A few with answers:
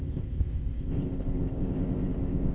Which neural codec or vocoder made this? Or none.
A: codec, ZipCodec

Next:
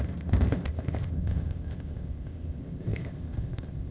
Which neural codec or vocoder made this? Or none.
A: codec, ZipCodec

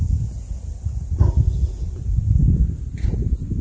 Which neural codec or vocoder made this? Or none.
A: none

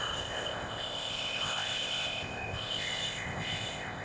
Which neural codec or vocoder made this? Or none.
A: codec, ZipCodec